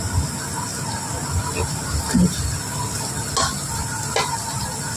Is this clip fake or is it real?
real